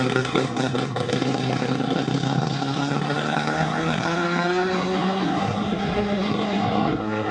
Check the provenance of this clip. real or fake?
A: fake